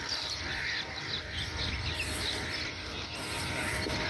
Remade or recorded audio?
remade